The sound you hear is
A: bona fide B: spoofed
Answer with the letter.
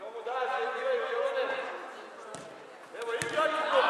A